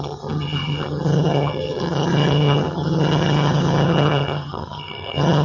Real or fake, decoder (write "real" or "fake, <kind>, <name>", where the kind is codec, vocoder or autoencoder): fake, vocoder, HiFi-GAN